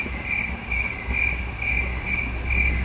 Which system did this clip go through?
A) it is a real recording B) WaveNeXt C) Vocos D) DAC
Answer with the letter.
A